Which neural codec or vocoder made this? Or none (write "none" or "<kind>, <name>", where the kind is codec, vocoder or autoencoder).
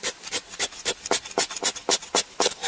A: none